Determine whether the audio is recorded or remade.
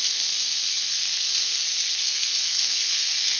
remade